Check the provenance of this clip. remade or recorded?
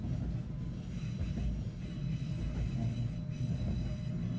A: recorded